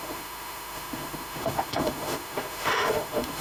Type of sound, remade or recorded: remade